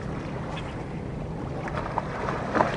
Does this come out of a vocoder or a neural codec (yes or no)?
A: no